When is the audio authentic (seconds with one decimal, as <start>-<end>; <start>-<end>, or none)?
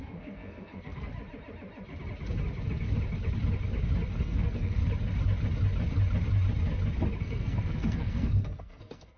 1.1-4.2; 4.8-7.2